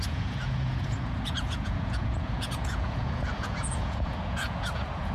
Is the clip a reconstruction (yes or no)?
yes